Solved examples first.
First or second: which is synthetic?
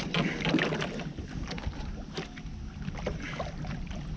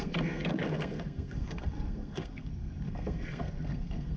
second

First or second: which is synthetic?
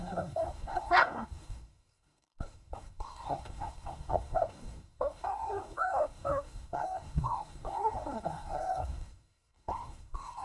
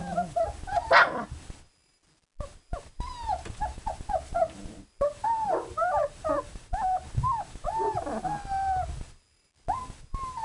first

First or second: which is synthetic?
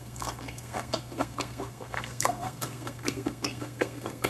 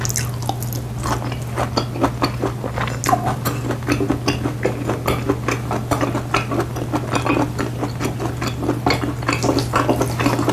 first